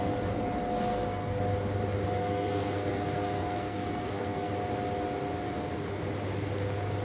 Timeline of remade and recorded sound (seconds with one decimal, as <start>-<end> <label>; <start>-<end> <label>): 0.0-0.9 recorded; 0.9-1.4 remade; 1.4-2.2 recorded; 2.2-4.5 remade; 4.5-7.0 recorded